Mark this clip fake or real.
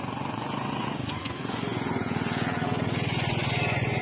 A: fake